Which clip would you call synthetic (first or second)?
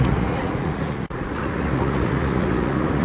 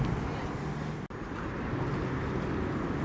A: first